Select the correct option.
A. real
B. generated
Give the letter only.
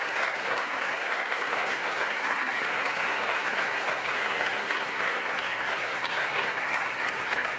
B